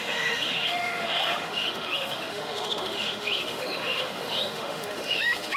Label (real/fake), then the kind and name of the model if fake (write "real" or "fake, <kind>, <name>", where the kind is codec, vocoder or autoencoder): fake, autoencoder, DAC-VAE